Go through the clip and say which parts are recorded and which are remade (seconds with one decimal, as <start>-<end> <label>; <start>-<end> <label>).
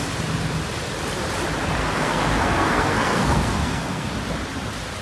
0.0-1.8 recorded; 1.8-4.1 remade; 4.1-5.0 recorded